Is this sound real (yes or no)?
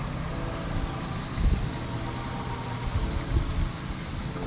yes